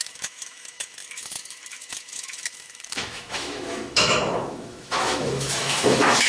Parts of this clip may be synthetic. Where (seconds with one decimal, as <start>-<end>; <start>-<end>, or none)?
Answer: 0.0-6.3